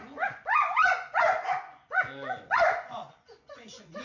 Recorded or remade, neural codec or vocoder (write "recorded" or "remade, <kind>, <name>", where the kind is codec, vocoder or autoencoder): remade, vocoder, Vocos